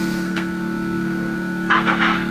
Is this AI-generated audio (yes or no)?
yes